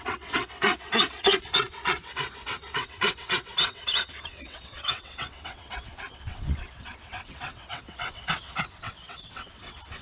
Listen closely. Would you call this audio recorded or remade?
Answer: remade